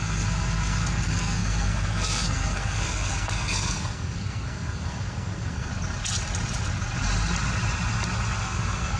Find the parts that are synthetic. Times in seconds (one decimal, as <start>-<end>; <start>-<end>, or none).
0.0-5.7; 8.4-9.0